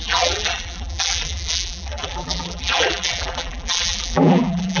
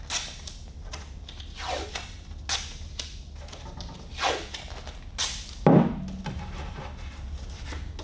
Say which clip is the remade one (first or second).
first